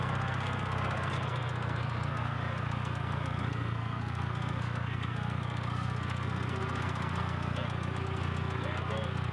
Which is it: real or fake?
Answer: fake